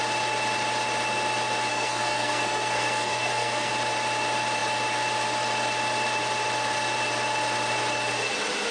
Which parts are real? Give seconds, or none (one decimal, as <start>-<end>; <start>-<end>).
0.0-1.7; 3.7-8.7

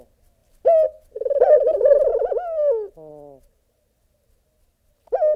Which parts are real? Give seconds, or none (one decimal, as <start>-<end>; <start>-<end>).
0.0-5.4